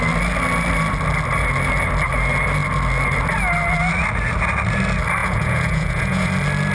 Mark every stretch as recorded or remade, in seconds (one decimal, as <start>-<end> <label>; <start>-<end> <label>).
0.0-5.2 recorded; 5.2-6.3 remade; 6.3-6.7 recorded